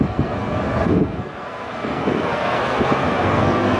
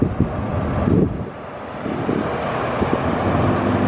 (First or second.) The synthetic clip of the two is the first